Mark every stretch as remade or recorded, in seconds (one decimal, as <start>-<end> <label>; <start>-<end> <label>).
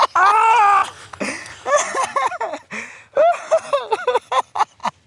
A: 0.0-5.1 recorded